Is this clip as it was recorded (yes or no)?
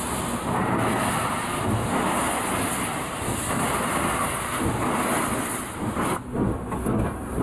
yes